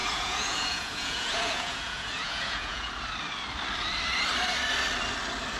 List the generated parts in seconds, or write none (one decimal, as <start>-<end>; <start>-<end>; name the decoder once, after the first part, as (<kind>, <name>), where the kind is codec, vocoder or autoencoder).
0.0-2.9 (vocoder, Vocos)